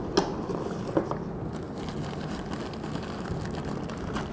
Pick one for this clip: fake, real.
real